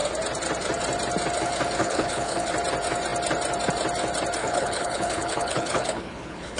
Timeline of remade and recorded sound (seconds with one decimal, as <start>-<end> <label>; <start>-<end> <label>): 0.0-1.8 recorded; 1.8-2.5 remade; 2.5-4.4 recorded; 4.4-6.6 remade